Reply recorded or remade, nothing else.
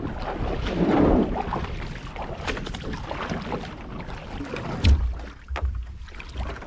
recorded